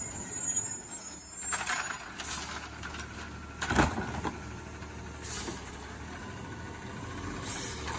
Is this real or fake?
real